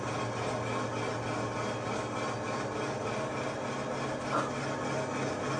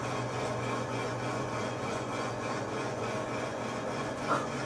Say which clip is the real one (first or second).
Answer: first